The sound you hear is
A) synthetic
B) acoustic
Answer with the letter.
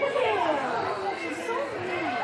A